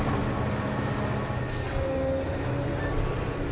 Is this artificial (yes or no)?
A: no